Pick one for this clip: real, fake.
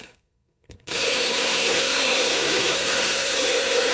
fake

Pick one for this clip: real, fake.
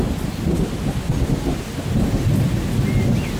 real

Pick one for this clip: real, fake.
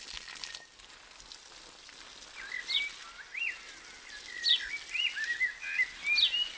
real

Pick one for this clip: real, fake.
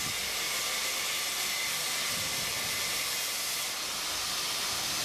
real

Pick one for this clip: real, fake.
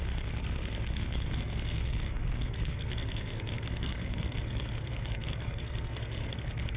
fake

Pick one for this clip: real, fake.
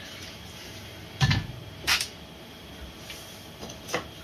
real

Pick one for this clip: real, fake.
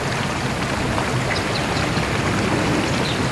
real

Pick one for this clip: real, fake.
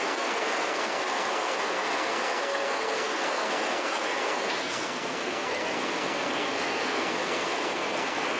fake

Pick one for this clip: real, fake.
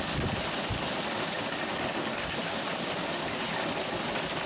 real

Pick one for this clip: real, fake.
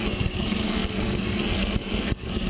fake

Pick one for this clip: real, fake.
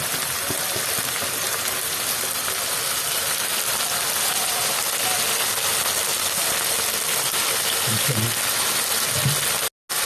real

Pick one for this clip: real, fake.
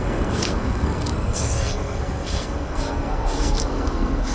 fake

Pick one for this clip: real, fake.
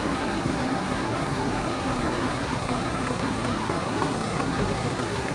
fake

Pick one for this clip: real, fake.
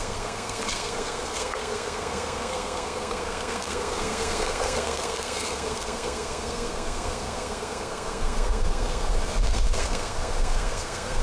fake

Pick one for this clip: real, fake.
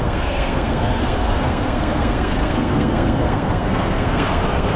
fake